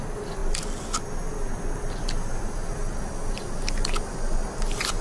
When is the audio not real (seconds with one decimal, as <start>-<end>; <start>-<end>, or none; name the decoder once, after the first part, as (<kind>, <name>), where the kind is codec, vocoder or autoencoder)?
none